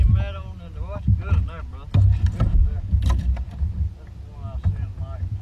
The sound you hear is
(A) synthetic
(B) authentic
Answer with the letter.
B